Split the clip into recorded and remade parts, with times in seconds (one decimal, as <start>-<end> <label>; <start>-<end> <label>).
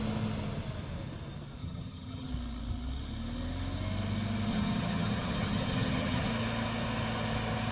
0.0-1.6 recorded; 1.6-2.3 remade; 2.3-4.5 recorded; 4.5-6.3 remade; 6.3-7.7 recorded